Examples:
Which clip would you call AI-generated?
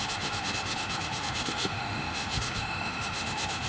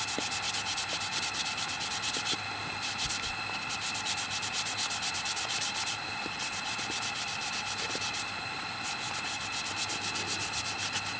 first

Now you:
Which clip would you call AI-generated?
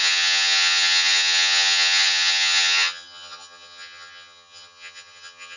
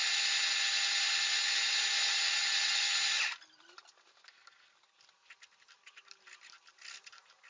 first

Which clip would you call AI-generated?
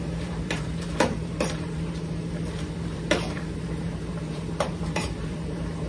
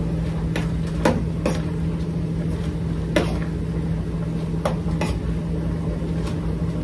first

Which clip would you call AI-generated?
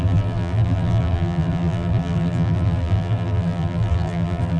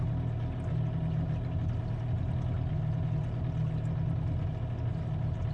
first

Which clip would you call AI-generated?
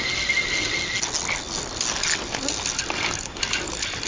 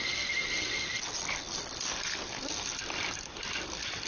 second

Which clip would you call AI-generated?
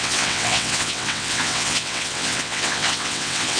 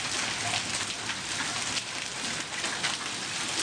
first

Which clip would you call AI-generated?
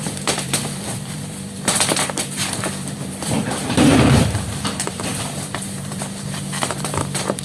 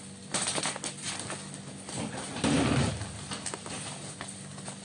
first